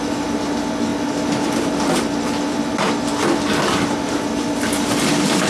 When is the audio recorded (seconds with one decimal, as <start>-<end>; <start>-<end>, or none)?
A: 0.0-5.5